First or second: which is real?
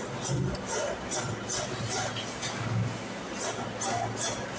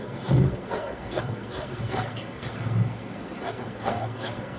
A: first